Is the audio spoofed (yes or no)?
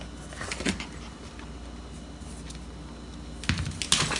no